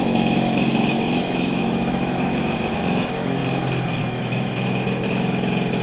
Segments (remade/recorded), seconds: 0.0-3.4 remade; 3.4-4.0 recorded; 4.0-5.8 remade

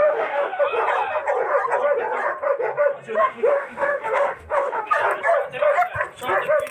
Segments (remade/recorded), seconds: 0.0-0.6 remade; 0.6-3.2 recorded; 3.2-4.9 remade; 4.9-6.7 recorded

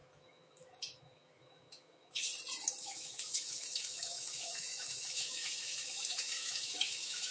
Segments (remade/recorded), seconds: 0.0-2.3 remade; 2.3-2.8 recorded; 2.8-7.3 remade